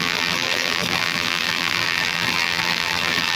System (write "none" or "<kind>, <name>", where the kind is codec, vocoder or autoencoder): vocoder, BigVGAN v2